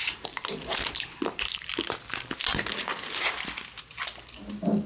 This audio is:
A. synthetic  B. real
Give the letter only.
B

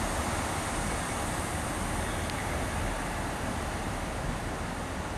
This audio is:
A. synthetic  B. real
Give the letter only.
B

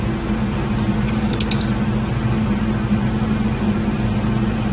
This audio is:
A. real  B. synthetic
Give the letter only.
A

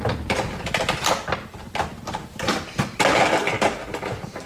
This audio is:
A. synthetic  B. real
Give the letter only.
B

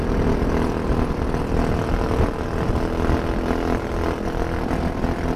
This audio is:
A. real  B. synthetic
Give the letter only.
A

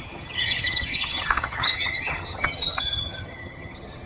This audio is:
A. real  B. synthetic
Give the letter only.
B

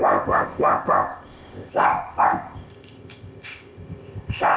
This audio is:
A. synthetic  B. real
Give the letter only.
A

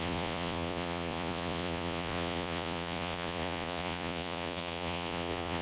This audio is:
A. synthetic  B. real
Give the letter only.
A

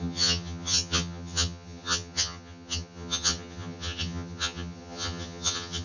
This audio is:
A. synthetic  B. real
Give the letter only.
A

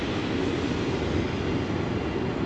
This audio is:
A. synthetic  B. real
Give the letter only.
B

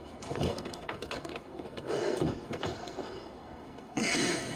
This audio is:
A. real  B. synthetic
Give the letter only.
B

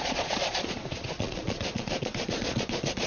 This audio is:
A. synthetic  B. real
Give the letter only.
A